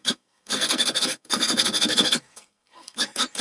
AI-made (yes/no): yes